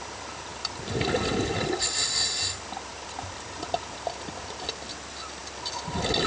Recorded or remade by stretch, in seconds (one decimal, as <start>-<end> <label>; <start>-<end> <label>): 0.0-0.5 recorded; 0.5-2.3 remade; 2.3-2.9 recorded; 2.9-4.4 remade; 4.4-6.3 recorded